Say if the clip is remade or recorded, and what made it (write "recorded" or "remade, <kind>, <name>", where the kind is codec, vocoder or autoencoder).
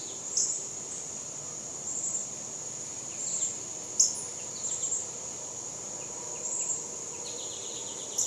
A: recorded